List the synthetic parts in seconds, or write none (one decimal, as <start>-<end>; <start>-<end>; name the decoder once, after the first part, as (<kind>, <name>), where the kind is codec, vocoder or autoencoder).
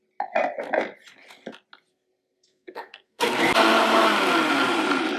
1.9-3.5 (codec, SNAC)